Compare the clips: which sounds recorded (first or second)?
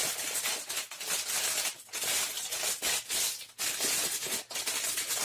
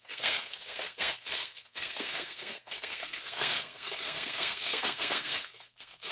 first